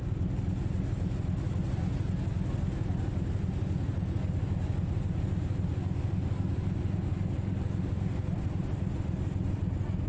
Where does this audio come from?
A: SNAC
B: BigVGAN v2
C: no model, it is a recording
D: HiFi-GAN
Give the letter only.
C